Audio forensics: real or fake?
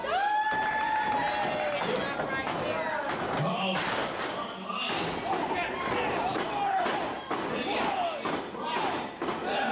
real